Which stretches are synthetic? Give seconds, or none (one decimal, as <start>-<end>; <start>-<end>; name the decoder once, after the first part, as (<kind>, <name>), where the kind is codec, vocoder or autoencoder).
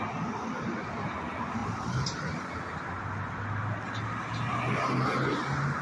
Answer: none